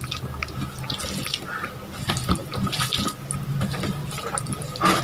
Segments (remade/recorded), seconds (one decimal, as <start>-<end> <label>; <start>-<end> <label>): 0.0-5.0 recorded